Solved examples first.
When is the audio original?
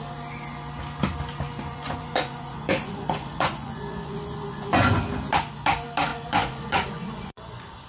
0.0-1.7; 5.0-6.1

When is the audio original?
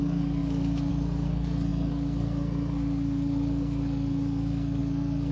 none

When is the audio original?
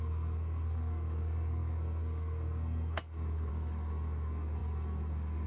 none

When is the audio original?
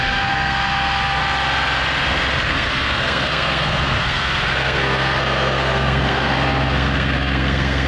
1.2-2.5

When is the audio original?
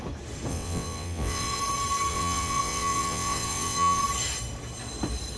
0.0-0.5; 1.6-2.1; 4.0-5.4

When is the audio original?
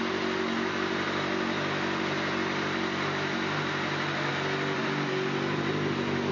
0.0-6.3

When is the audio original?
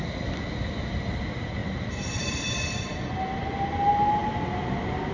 0.0-1.6; 2.5-5.1